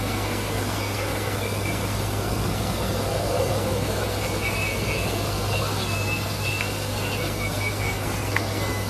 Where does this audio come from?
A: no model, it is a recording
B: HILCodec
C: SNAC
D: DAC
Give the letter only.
C